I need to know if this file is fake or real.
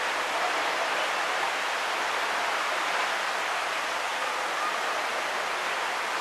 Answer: real